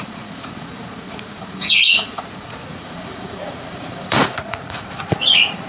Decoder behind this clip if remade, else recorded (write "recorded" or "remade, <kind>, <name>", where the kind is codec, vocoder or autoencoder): remade, vocoder, Vocos